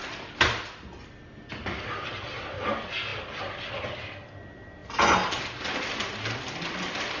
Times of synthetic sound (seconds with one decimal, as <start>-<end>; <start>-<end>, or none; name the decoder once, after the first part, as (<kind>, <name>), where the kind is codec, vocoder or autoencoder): none